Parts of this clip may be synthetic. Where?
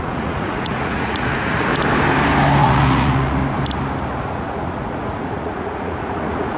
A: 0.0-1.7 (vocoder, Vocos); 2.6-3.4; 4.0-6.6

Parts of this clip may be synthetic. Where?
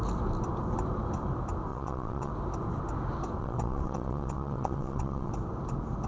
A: 1.7-2.3 (vocoder, WaveNeXt); 3.4-5.3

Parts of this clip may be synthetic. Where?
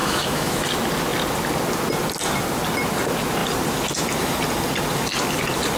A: 0.0-0.6 (autoencoder, DAC-VAE)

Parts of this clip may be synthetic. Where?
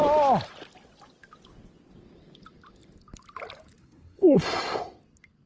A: 3.8-4.4 (codec, SNAC)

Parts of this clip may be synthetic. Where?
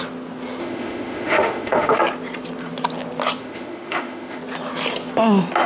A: 0.6-2.0 (autoencoder, DAC-VAE); 3.4-4.4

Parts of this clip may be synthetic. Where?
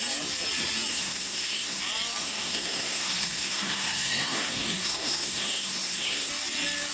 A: 0.9-1.8 (codec, SNAC); 2.2-6.3